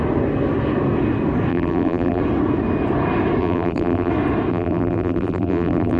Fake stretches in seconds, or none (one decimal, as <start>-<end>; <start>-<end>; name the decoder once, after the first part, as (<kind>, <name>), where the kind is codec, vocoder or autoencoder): 1.5-2.2 (vocoder, BigVGAN v2); 3.4-4.1; 4.5-6.0